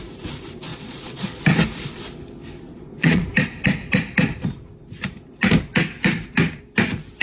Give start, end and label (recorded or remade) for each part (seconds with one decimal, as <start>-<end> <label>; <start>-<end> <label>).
0.0-0.7 recorded; 0.7-1.4 remade; 1.4-2.7 recorded; 2.7-3.2 remade; 3.2-7.2 recorded